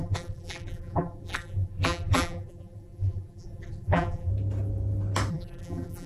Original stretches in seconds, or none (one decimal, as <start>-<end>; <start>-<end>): 4.3-5.3